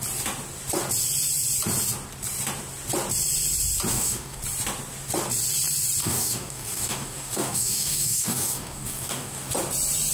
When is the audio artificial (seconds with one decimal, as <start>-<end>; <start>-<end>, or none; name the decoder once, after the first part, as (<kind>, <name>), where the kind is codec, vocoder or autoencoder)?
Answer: 3.9-4.4 (codec, DAC); 6.0-9.5